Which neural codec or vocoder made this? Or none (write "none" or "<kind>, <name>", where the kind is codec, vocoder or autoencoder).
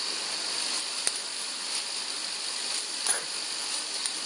none